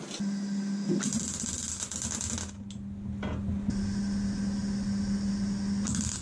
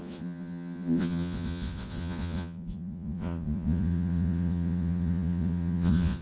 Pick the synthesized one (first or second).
second